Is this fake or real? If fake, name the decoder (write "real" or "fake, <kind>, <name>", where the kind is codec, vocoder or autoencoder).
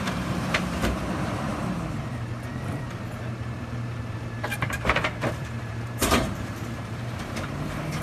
fake, vocoder, BigVGAN v2